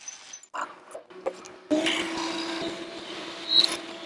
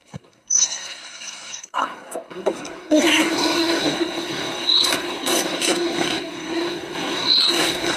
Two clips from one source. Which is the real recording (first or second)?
first